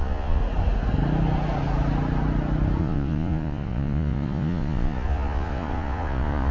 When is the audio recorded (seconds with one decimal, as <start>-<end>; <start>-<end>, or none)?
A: 0.4-2.8

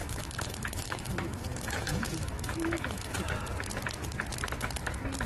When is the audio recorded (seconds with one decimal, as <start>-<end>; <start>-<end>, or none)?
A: 3.2-5.3

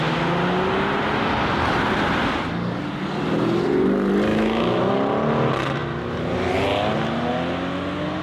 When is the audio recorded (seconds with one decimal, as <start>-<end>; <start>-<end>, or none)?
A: 0.0-4.3; 4.9-8.2

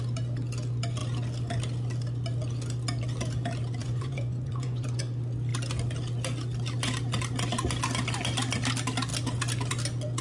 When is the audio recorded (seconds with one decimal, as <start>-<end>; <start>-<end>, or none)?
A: 0.0-3.8; 5.0-10.2